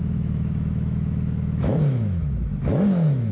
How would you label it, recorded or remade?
remade